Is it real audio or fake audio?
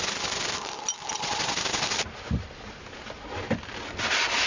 real